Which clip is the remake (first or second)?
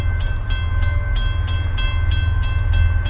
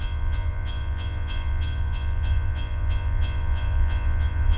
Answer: second